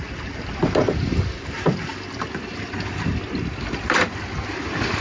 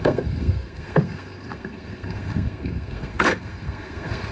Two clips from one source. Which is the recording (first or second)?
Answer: first